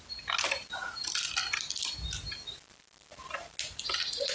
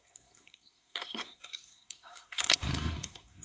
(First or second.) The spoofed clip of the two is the second